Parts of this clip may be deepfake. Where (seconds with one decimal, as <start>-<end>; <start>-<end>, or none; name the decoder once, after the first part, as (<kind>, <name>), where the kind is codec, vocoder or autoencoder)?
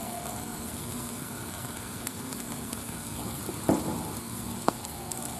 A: 0.0-3.4 (codec, SNAC); 4.2-5.4